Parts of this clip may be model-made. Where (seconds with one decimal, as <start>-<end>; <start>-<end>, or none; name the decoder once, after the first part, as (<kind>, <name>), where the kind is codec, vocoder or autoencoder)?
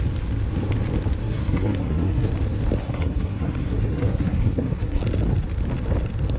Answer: 1.2-2.3 (codec, SNAC); 2.8-5.0